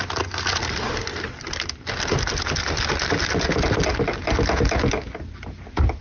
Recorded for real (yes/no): yes